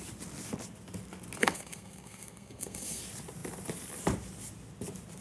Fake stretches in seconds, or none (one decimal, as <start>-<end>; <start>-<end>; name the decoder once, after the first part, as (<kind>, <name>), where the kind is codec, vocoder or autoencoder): 1.4-3.0 (codec, SNAC)